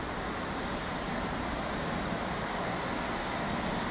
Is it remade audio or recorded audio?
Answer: recorded